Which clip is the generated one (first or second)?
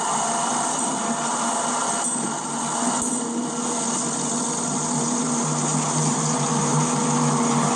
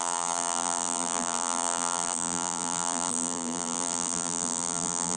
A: second